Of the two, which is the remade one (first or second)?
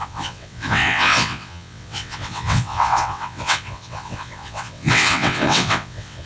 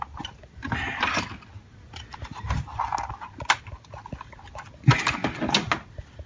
first